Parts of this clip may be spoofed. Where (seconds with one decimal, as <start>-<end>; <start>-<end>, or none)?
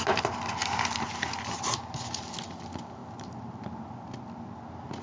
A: 0.6-1.1; 3.0-4.0